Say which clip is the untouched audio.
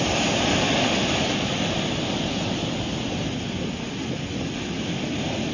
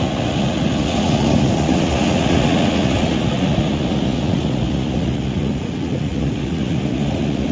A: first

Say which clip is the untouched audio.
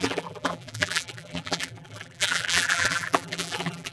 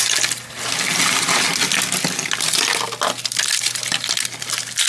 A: second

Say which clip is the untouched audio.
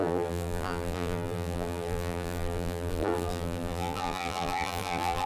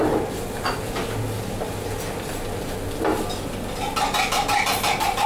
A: second